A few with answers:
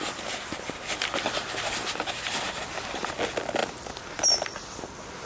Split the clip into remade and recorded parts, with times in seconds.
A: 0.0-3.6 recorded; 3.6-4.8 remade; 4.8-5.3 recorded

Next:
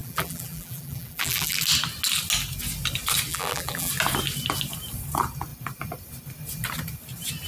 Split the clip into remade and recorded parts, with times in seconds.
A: 0.0-1.6 remade; 1.6-3.3 recorded; 3.3-3.9 remade; 3.9-7.5 recorded

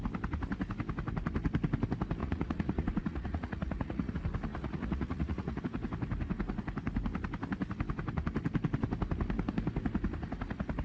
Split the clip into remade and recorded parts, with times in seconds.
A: 0.0-2.2 recorded; 2.2-4.1 remade; 4.1-4.5 recorded; 4.5-5.6 remade; 5.6-10.8 recorded